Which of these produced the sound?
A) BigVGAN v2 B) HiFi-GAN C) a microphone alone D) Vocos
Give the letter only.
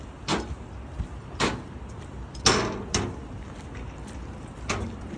C